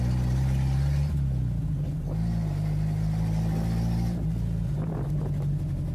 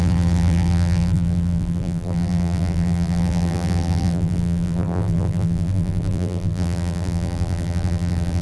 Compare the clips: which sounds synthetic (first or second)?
second